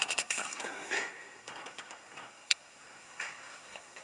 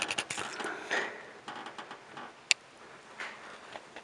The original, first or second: second